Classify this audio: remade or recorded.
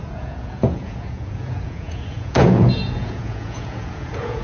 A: remade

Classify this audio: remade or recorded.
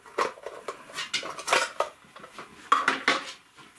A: recorded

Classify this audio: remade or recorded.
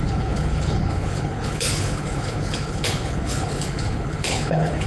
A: remade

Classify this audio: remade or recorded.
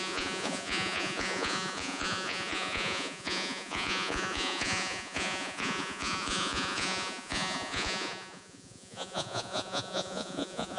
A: remade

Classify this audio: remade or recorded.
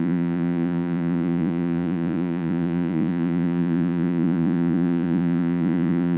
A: remade